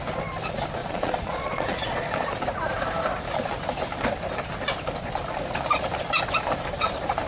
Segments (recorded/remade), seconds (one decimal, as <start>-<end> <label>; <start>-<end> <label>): 0.0-0.8 recorded; 0.8-2.3 remade; 2.3-7.3 recorded

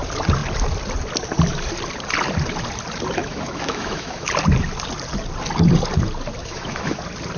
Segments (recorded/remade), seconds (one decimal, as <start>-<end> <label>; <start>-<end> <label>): 0.0-3.2 recorded; 3.2-4.3 remade; 4.3-6.4 recorded; 6.4-7.0 remade; 7.0-7.4 recorded

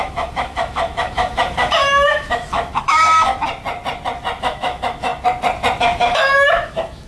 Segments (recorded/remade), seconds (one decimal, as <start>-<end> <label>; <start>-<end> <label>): 0.0-3.3 remade; 3.3-4.4 recorded; 4.4-5.1 remade; 5.1-5.8 recorded; 5.8-7.1 remade

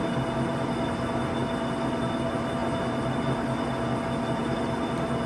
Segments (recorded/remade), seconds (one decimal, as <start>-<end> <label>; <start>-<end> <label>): 0.0-5.3 recorded